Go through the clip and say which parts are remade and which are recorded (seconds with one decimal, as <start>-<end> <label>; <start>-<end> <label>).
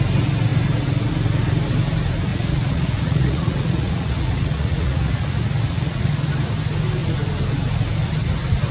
0.0-2.3 recorded; 2.3-6.3 remade; 6.3-8.7 recorded